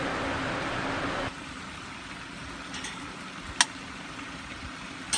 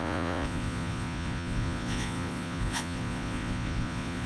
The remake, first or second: second